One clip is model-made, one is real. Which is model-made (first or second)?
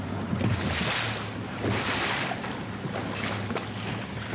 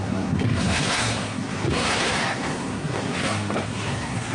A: second